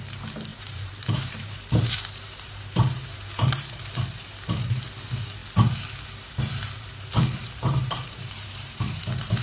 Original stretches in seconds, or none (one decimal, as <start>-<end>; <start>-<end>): 0.0-0.5; 4.8-7.4; 9.0-9.4

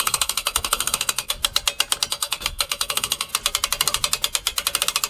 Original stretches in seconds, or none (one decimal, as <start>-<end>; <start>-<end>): 1.4-2.1; 3.3-5.1

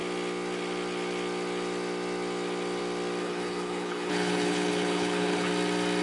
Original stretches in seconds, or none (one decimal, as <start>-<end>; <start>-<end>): 0.0-3.2; 5.5-6.0

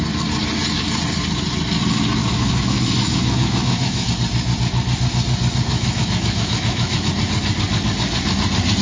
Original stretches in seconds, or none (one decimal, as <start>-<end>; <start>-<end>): 0.0-2.2; 4.1-5.7; 7.1-8.8